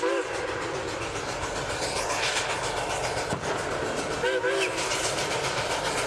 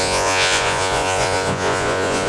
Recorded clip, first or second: first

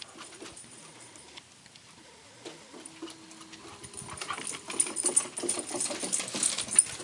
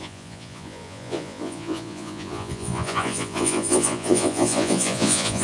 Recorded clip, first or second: first